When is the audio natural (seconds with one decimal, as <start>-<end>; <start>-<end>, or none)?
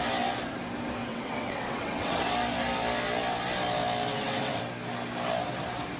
0.0-1.1; 2.2-4.1; 4.6-6.0